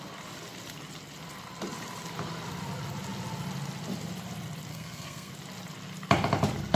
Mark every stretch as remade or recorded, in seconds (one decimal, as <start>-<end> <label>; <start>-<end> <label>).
0.0-4.7 recorded; 4.7-5.3 remade; 5.3-6.8 recorded

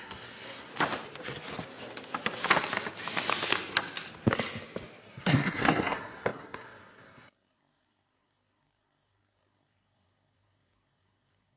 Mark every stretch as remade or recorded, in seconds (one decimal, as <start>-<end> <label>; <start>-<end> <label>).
0.0-0.7 remade; 0.7-5.0 recorded; 5.0-11.6 remade

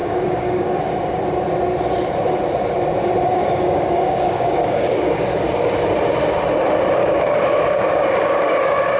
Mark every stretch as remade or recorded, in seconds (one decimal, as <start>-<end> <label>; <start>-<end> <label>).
0.0-0.8 remade; 0.8-3.3 recorded; 3.3-5.7 remade; 5.7-7.0 recorded; 7.0-9.0 remade